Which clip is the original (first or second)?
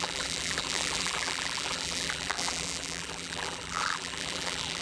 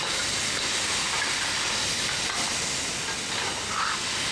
second